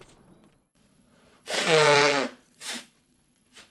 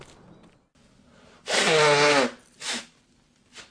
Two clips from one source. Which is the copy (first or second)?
first